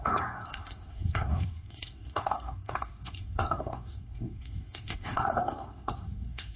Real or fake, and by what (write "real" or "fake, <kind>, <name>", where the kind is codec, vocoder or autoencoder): fake, codec, SNAC